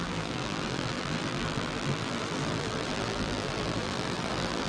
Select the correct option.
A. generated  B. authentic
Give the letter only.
A